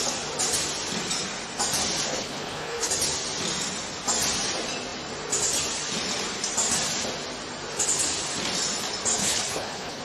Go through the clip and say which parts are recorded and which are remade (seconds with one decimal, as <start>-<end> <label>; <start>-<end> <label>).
0.0-2.1 recorded; 2.1-2.9 remade; 2.9-9.2 recorded; 9.2-10.0 remade